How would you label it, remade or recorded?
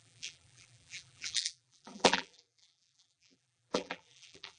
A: remade